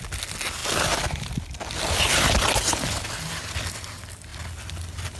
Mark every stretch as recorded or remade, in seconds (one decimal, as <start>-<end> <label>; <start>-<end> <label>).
0.0-5.2 recorded